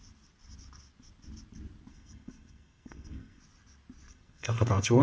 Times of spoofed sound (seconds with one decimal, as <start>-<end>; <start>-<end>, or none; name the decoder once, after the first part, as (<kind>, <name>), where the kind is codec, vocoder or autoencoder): 1.9-3.4 (codec, SNAC); 4.1-5.0